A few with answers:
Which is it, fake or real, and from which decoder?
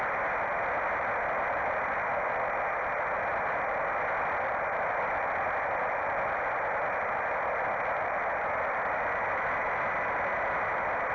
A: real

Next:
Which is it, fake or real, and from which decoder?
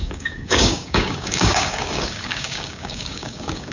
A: fake, codec, DAC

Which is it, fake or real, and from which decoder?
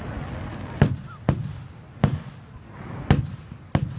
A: real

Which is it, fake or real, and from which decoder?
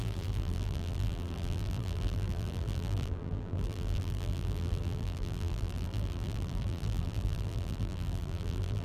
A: fake, vocoder, BigVGAN v2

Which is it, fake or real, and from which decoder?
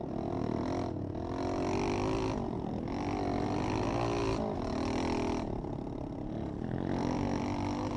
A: real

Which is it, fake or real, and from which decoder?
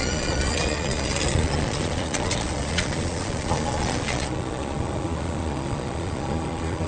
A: fake, vocoder, Vocos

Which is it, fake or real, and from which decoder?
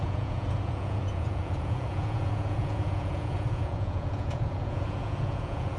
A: fake, vocoder, Vocos